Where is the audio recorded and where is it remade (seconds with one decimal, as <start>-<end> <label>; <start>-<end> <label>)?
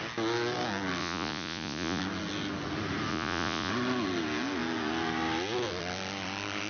0.0-1.0 recorded; 1.0-2.0 remade; 2.0-3.1 recorded; 3.1-3.7 remade; 3.7-6.7 recorded